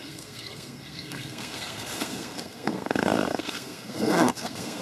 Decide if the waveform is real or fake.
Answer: fake